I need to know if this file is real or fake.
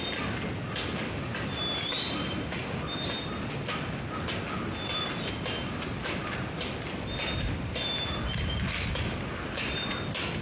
real